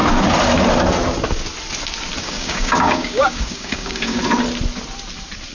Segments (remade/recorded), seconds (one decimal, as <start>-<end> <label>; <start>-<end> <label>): 0.0-2.2 recorded; 2.2-4.2 remade; 4.2-5.5 recorded